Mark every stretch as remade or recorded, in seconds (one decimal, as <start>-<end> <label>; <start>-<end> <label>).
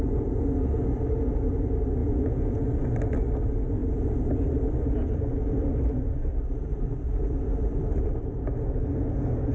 0.0-2.0 recorded; 2.0-2.6 remade; 2.6-9.5 recorded